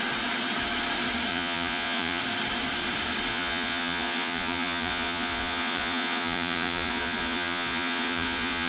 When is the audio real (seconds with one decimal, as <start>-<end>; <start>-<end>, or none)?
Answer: 0.0-1.3; 2.2-3.3